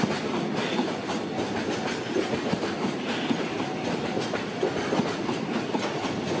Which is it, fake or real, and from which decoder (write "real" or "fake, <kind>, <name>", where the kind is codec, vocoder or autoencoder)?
real